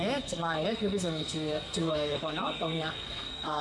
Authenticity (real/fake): fake